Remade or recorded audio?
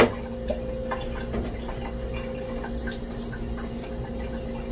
recorded